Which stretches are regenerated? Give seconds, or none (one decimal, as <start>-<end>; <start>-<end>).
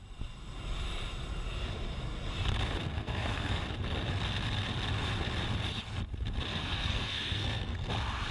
2.8-3.6; 6.5-7.9